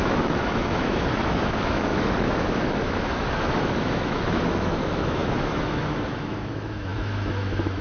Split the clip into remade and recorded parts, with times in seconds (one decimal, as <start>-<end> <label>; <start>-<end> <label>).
0.0-7.8 remade